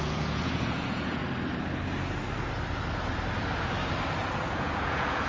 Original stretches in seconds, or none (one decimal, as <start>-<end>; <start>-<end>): 1.2-4.4